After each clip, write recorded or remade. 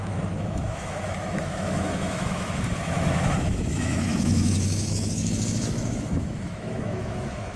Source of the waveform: remade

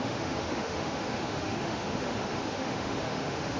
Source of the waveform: remade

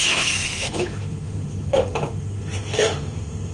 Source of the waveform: remade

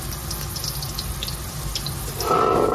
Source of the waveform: recorded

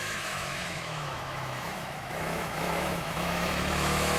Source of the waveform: remade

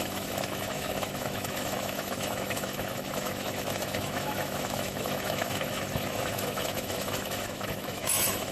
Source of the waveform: remade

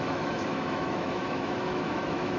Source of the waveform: remade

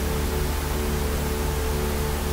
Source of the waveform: recorded